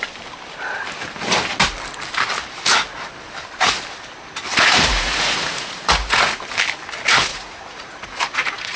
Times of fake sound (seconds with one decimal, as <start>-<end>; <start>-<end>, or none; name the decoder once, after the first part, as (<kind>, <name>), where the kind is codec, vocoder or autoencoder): 4.5-6.3 (vocoder, Vocos); 7.3-8.8